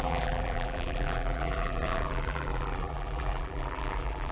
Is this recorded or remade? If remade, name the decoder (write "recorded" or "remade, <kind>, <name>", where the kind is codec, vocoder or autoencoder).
remade, vocoder, BigVGAN v2